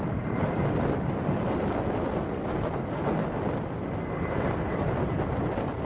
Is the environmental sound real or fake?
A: real